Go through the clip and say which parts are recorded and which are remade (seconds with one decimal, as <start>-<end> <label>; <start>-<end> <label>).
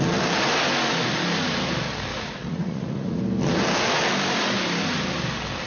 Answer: 0.0-2.1 recorded; 2.1-3.2 remade; 3.2-5.7 recorded